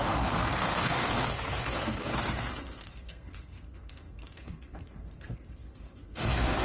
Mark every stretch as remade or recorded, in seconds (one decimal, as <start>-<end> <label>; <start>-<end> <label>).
0.0-6.6 remade